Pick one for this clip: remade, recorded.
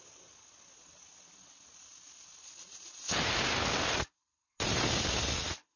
recorded